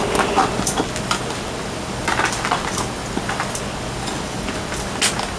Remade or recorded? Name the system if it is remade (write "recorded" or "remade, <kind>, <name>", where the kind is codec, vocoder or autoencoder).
recorded